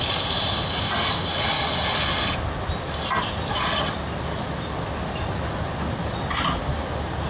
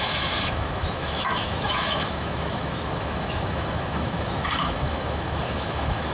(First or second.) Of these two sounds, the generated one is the second